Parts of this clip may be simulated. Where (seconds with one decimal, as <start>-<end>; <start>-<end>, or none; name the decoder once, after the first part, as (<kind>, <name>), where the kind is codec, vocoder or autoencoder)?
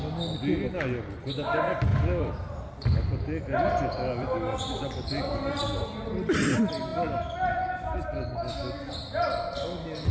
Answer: 1.9-6.1 (vocoder, BigVGAN v2)